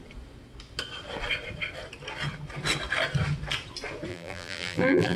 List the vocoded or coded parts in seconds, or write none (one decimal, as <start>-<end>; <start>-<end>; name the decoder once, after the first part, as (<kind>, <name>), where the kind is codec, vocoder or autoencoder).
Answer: 4.1-5.2 (vocoder, BigVGAN v2)